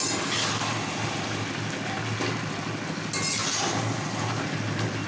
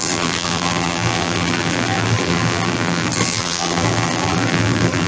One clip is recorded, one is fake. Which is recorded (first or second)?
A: first